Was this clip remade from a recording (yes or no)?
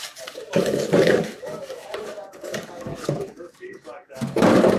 yes